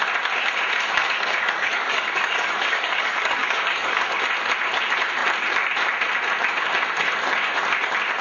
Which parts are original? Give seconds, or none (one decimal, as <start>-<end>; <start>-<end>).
0.0-1.0; 4.2-8.2